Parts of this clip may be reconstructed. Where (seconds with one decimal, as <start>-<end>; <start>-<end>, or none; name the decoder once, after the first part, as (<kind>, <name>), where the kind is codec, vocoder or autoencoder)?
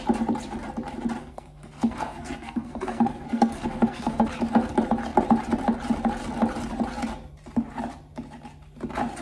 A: 1.2-4.3 (codec, SNAC)